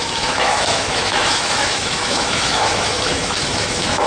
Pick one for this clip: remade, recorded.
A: remade